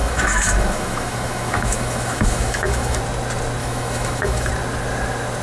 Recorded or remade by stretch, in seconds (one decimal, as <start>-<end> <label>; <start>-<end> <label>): 0.0-3.0 remade; 3.0-3.6 recorded; 3.6-4.5 remade; 4.5-5.4 recorded